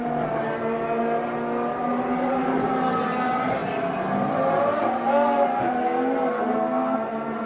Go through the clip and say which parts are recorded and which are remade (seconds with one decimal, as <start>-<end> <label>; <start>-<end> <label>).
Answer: 0.0-7.5 recorded